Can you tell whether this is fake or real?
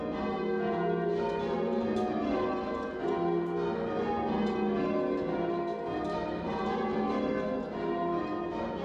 real